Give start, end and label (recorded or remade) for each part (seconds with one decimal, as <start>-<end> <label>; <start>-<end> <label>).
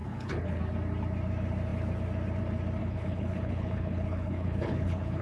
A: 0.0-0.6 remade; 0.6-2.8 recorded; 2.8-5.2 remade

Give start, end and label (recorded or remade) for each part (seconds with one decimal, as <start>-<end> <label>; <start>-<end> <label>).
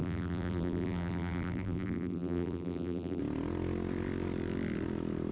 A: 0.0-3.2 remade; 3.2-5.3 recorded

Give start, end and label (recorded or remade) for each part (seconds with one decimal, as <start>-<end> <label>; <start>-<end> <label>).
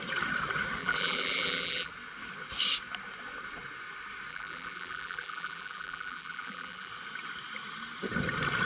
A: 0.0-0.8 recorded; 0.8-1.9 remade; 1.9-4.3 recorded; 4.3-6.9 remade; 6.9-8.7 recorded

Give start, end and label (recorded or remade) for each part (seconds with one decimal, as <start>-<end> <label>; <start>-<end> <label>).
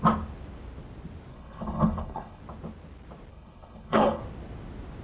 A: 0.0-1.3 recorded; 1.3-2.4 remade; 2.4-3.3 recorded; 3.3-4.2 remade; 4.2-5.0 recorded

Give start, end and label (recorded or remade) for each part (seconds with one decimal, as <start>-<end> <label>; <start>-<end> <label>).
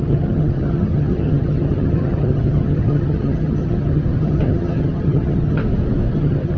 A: 0.0-5.6 remade; 5.6-6.1 recorded; 6.1-6.6 remade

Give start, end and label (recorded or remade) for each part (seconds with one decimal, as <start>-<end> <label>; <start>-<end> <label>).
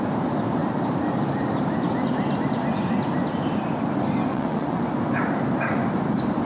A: 0.0-4.3 recorded; 4.3-4.8 remade; 4.8-6.4 recorded